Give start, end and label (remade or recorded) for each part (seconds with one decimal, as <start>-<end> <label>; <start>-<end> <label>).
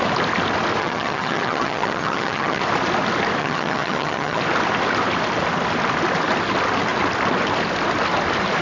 0.0-0.8 recorded; 0.8-2.6 remade; 2.6-3.4 recorded; 3.4-4.4 remade; 4.4-8.6 recorded